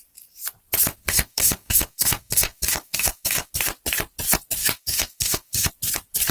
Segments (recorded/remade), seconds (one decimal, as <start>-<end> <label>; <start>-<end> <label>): 0.0-0.9 recorded; 0.9-3.5 remade; 3.5-4.6 recorded; 4.6-5.7 remade; 5.7-6.3 recorded

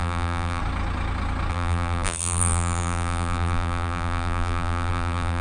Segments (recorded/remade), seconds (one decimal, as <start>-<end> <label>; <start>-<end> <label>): 0.0-0.6 remade; 0.6-1.5 recorded; 1.5-5.4 remade

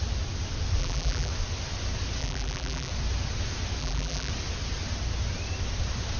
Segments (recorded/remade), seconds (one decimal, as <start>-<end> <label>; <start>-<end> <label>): 0.0-0.8 recorded; 0.8-1.3 remade; 1.3-2.2 recorded; 2.2-2.9 remade; 2.9-3.8 recorded; 3.8-4.3 remade; 4.3-6.2 recorded

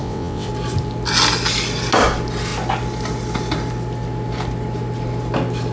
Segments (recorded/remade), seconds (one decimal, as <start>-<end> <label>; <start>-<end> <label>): 0.0-0.5 remade; 0.5-5.7 recorded

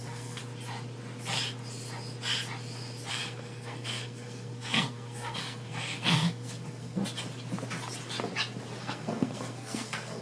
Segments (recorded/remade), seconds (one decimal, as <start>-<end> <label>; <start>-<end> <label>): 0.0-0.4 remade; 0.4-3.1 recorded; 3.1-7.0 remade; 7.0-8.8 recorded; 8.8-10.2 remade

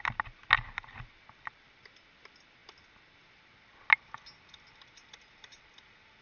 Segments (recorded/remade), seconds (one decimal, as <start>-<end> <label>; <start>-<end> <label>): 0.0-6.2 recorded

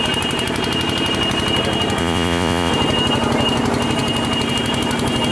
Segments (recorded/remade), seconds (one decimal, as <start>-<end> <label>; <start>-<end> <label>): 0.0-2.0 recorded; 2.0-2.7 remade; 2.7-5.3 recorded

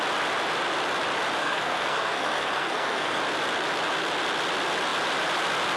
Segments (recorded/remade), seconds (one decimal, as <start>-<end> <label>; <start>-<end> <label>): 0.0-1.4 recorded; 1.4-3.2 remade; 3.2-5.8 recorded